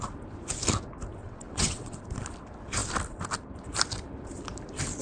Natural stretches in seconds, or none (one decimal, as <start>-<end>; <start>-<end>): 0.0-1.2; 2.0-5.0